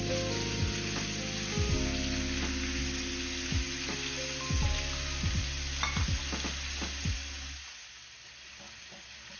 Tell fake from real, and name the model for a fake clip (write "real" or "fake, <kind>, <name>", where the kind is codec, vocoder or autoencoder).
real